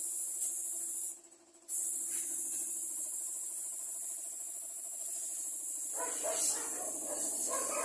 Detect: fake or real real